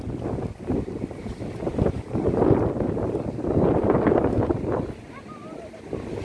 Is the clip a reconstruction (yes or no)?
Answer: no